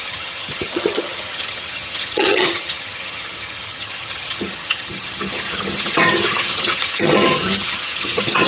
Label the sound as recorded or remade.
remade